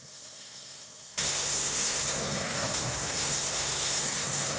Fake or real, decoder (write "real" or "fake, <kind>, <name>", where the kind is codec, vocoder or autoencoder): fake, codec, SNAC